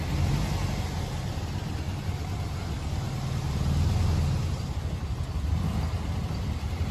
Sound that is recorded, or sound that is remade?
recorded